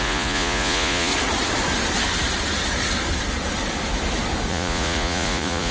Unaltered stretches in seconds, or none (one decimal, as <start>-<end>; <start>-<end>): 1.1-4.5